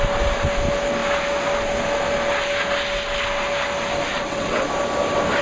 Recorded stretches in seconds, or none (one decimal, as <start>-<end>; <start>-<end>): 0.0-4.1; 4.7-5.4